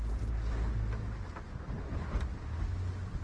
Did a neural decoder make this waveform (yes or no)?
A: no